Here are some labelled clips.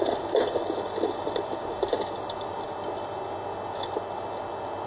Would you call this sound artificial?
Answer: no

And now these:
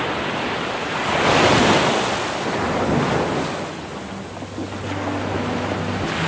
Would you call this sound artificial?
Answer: no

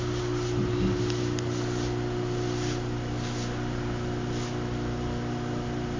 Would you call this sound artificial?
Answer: no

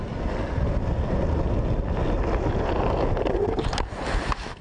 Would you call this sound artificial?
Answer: no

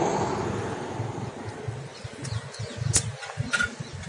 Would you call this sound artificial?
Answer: no